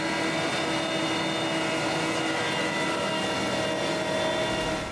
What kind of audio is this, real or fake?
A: real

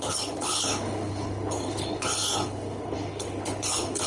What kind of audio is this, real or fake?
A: fake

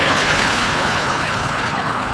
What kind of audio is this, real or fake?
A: fake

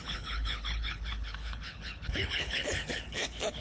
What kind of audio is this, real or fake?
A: fake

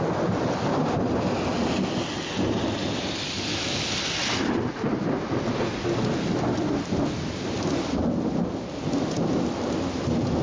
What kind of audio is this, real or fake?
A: real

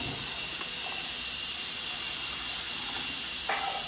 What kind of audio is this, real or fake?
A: real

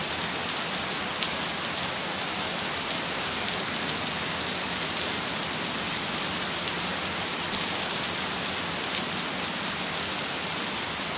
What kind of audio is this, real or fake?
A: real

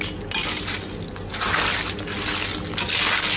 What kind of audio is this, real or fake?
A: real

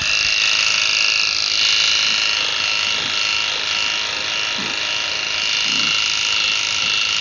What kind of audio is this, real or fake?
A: real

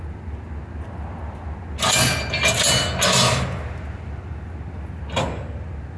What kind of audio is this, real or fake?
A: real